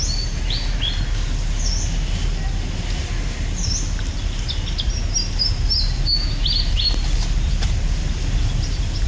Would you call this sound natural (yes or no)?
yes